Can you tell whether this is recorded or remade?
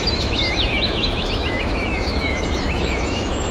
remade